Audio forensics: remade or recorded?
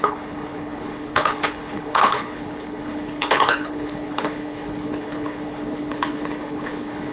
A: remade